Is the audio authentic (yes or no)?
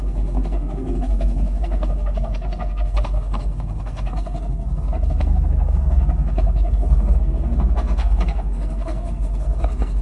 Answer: no